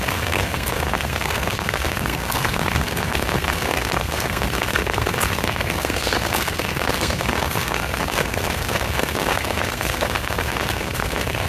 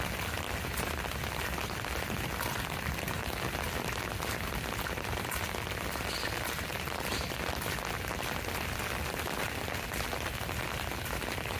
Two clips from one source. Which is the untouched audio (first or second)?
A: second